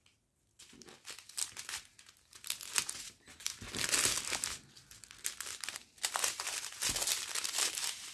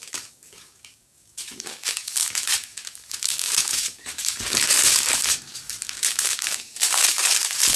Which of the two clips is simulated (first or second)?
second